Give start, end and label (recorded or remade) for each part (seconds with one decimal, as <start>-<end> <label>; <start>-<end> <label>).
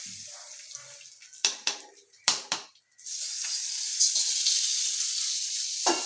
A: 0.0-1.4 recorded; 1.4-3.7 remade; 3.7-4.7 recorded; 4.7-5.2 remade; 5.2-6.1 recorded